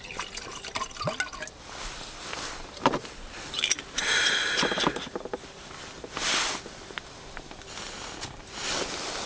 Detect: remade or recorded recorded